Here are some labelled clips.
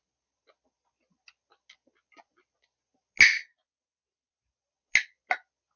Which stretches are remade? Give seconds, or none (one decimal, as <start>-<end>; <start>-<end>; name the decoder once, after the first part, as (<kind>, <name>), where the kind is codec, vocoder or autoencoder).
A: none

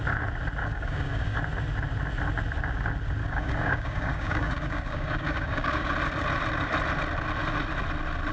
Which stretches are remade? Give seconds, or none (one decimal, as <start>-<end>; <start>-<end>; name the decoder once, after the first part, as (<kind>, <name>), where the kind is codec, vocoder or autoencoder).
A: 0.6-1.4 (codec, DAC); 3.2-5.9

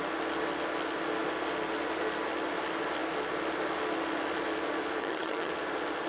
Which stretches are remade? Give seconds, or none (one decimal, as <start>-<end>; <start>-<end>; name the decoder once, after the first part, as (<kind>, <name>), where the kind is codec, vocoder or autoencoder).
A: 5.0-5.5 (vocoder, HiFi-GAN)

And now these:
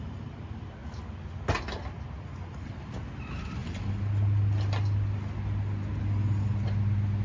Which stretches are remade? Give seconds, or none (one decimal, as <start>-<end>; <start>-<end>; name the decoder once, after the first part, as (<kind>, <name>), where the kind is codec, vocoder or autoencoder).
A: none